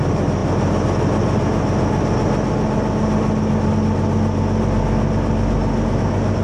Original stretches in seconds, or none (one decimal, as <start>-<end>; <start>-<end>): 0.0-6.4